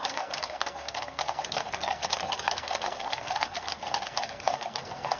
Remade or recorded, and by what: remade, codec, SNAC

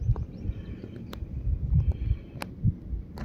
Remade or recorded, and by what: recorded